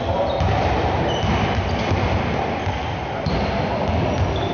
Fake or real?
real